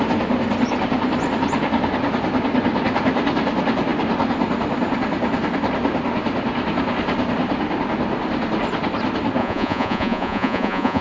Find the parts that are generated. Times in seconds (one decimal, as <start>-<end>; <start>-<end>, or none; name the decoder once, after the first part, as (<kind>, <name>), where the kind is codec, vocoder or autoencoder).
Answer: 9.4-11.0 (vocoder, Vocos)